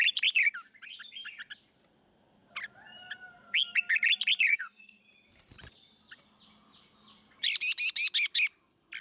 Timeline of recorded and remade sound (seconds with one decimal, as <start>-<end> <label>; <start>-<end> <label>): 0.0-4.5 recorded; 4.5-5.0 remade; 5.0-9.0 recorded